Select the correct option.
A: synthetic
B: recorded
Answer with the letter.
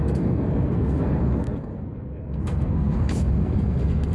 A